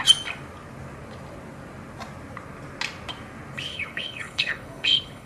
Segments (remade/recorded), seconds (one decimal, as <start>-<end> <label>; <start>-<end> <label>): 0.0-3.7 recorded; 3.7-5.3 remade

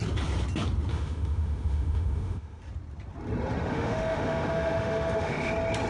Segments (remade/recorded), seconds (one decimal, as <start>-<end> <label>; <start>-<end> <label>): 0.0-0.9 recorded; 0.9-2.6 remade; 2.6-3.7 recorded; 3.7-5.5 remade; 5.5-5.9 recorded

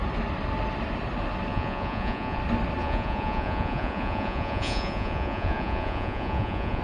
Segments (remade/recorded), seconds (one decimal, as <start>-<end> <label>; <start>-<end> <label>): 0.0-1.5 recorded; 1.5-2.4 remade; 2.4-2.8 recorded; 2.8-6.8 remade

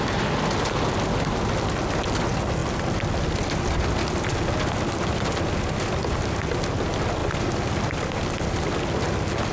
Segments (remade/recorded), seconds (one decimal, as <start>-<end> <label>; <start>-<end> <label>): 0.0-9.5 recorded

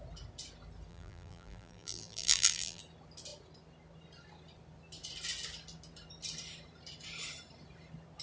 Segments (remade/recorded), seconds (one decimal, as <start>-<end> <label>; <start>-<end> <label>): 0.0-0.9 recorded; 0.9-2.8 remade; 2.8-8.2 recorded

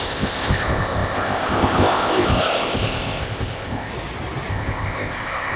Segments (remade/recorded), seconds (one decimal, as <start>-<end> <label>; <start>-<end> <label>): 0.0-3.9 remade; 3.9-4.5 recorded; 4.5-5.6 remade

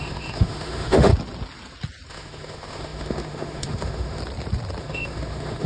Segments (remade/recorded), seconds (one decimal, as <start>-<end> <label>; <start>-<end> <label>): 0.0-1.1 remade; 1.1-2.1 recorded; 2.1-4.2 remade; 4.2-4.8 recorded; 4.8-5.7 remade

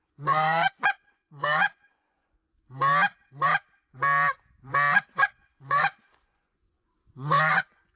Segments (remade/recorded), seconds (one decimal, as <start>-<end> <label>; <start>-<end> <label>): 0.0-2.4 remade; 2.4-4.7 recorded; 4.7-8.0 remade